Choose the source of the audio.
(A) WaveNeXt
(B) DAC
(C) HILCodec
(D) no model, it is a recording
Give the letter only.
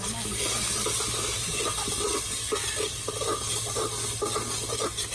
D